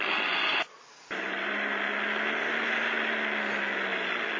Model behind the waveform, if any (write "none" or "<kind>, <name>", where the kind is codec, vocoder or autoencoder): none